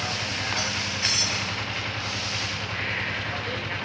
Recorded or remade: recorded